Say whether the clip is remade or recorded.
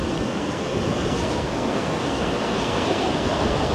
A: remade